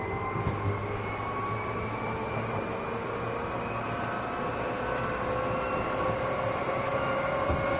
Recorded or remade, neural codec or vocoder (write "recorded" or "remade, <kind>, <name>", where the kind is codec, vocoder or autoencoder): recorded